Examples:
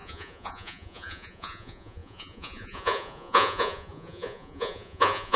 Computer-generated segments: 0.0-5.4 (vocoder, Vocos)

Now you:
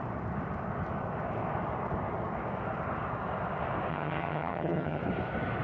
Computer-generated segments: 3.9-5.0 (vocoder, HiFi-GAN)

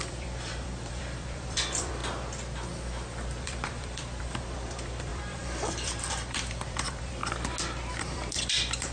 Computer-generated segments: 0.0-2.0 (vocoder, BigVGAN v2); 3.4-7.2; 8.0-8.9